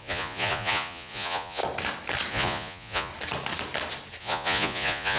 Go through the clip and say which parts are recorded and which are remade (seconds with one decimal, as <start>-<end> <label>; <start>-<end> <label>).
0.0-1.6 remade; 1.6-2.3 recorded; 2.3-3.1 remade; 3.1-4.2 recorded; 4.2-5.2 remade